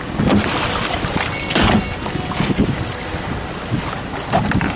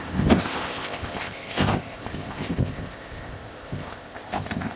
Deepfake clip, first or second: second